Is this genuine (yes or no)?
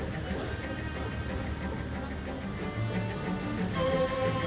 yes